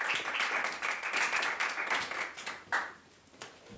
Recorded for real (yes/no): yes